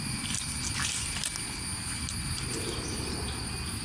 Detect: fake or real real